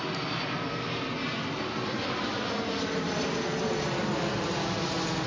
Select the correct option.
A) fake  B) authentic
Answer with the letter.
B